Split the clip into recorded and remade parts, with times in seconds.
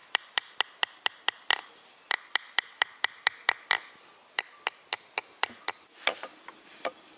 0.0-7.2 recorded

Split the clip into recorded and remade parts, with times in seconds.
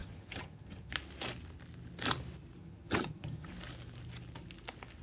0.0-0.9 remade; 0.9-2.6 recorded; 2.6-3.5 remade; 3.5-5.0 recorded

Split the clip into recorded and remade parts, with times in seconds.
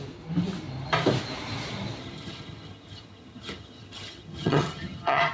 0.0-2.0 recorded; 2.0-5.3 remade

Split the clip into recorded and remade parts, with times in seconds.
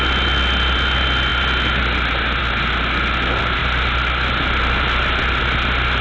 0.0-6.0 recorded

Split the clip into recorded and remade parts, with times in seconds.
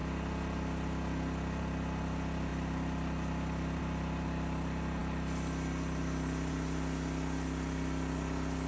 0.0-8.7 recorded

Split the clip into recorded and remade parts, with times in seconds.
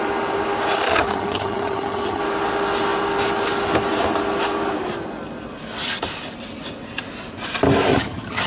0.0-0.9 recorded; 0.9-2.2 remade; 2.2-7.9 recorded; 7.9-8.5 remade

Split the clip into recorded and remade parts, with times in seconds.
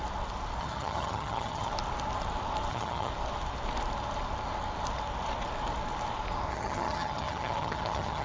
0.0-0.6 recorded; 0.6-1.7 remade; 1.7-2.7 recorded; 2.7-3.1 remade; 3.1-6.5 recorded; 6.5-8.2 remade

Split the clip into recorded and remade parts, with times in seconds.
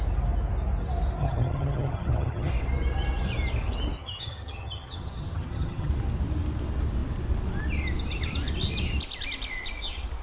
0.0-1.2 recorded; 1.2-2.5 remade; 2.5-4.0 recorded; 4.0-5.9 remade; 5.9-10.2 recorded